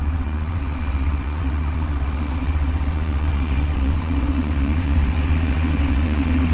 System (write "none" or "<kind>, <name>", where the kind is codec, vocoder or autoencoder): vocoder, WaveNeXt